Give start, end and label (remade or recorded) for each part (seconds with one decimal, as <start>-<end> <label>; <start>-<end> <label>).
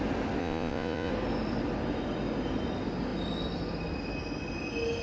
0.0-0.4 recorded; 0.4-1.1 remade; 1.1-5.0 recorded